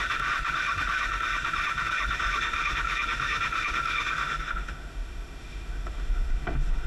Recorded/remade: remade